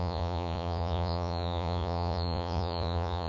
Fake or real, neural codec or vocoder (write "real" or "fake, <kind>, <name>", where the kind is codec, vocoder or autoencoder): fake, vocoder, Vocos